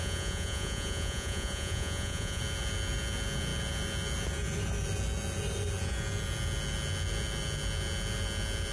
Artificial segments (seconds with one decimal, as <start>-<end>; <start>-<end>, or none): 0.0-2.4